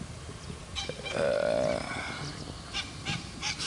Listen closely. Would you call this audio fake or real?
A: real